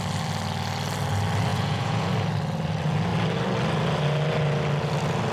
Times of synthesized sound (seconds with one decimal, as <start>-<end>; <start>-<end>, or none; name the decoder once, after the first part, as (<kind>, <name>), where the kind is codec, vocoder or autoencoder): 1.5-2.1 (vocoder, Vocos)